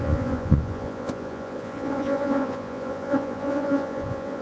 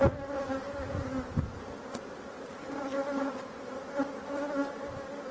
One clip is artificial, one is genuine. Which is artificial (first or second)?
first